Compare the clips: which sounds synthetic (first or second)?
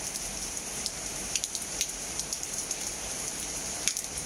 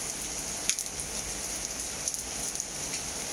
first